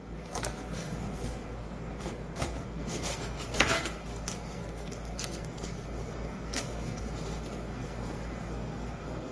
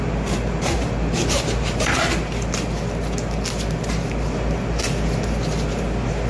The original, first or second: second